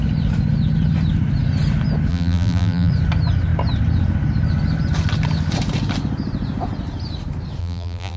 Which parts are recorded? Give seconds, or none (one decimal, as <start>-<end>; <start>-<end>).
0.0-2.1; 2.9-7.6